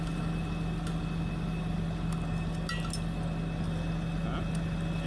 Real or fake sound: real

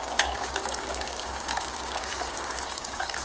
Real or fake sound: fake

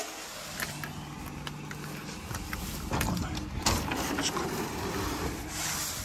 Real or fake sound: real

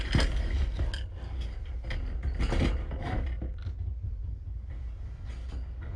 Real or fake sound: real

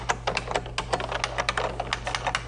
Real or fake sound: real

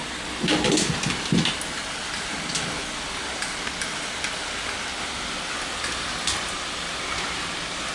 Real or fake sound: real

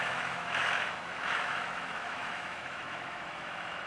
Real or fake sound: fake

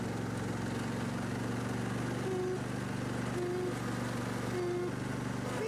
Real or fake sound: real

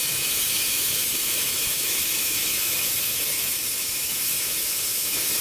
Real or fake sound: fake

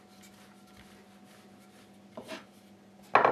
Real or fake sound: real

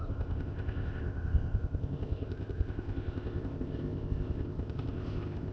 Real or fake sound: fake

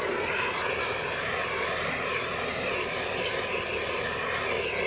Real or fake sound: real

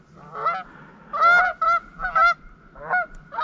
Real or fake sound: real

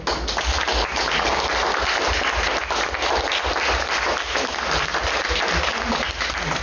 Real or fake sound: real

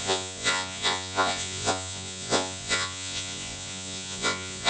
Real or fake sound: fake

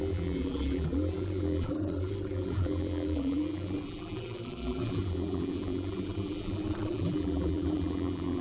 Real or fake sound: fake